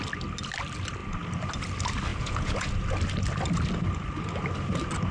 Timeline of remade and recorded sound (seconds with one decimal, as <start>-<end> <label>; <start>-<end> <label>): 0.0-2.1 recorded; 2.1-2.7 remade; 2.7-5.1 recorded